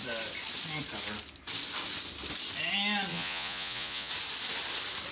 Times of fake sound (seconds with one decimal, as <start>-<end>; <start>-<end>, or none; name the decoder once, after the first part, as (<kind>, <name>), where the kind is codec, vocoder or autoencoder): 3.1-4.1 (vocoder, Vocos)